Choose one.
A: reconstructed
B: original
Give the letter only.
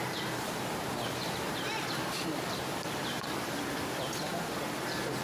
A